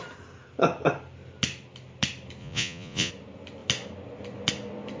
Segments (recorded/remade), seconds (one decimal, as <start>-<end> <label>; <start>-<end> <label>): 0.0-2.4 recorded; 2.4-3.1 remade; 3.1-5.0 recorded